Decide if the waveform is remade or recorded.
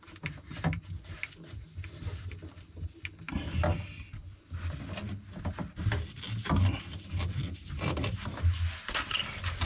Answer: recorded